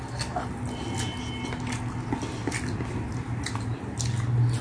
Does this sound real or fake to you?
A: real